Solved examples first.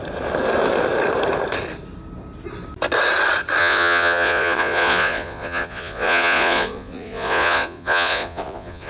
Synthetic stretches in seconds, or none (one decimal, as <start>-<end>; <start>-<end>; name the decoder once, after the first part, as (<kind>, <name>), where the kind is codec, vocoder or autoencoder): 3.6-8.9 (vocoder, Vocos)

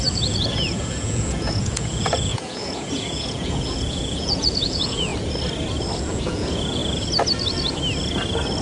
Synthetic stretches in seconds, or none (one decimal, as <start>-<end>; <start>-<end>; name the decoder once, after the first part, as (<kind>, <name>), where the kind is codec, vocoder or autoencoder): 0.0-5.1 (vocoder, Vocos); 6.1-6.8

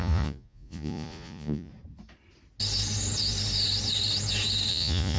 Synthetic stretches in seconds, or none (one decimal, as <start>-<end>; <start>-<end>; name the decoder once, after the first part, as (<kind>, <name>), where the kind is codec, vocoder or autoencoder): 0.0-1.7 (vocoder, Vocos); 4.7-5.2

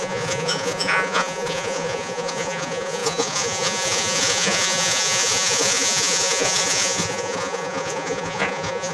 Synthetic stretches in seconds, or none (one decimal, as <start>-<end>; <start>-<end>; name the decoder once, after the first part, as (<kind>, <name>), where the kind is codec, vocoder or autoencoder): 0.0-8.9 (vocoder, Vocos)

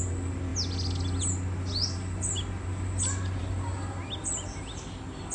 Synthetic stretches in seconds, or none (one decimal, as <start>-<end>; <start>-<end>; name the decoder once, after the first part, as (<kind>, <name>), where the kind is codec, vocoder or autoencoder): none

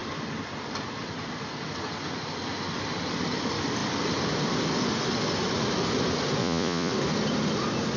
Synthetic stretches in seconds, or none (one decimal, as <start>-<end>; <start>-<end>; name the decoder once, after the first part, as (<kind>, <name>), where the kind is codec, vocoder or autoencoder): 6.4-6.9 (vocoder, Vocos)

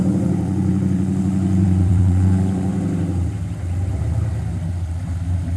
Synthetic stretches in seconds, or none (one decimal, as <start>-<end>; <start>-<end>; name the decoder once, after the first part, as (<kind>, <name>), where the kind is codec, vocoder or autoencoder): 0.0-2.7 (vocoder, Vocos)